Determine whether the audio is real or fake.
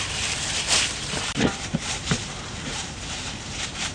fake